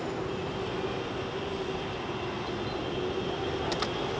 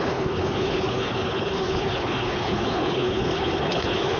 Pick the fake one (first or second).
second